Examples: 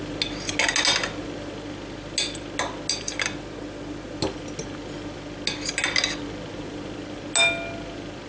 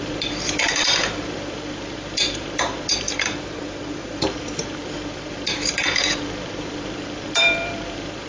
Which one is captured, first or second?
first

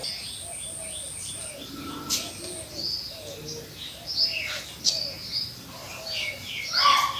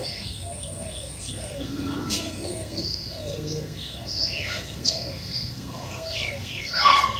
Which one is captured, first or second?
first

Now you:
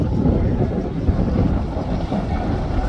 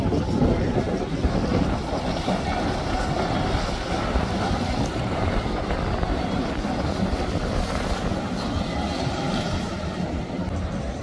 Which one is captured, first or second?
second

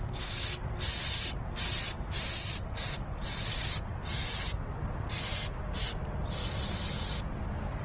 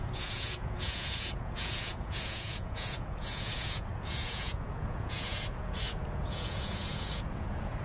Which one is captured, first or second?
first